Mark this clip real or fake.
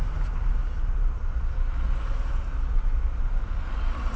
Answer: real